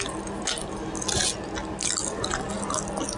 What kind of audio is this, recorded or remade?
recorded